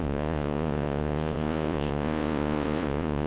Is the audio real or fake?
fake